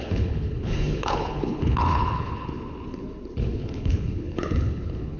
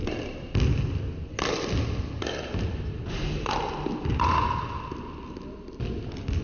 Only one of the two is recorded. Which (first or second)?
second